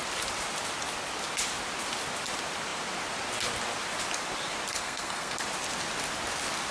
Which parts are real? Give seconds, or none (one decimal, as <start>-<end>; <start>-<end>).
0.0-4.7; 5.4-6.7